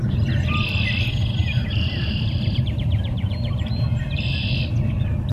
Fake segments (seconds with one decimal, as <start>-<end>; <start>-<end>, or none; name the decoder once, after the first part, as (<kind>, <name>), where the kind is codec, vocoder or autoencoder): 1.4-4.6 (vocoder, BigVGAN v2)